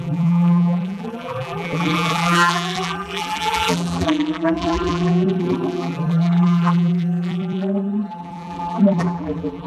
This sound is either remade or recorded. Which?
remade